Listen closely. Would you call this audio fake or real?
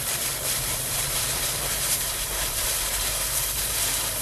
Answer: fake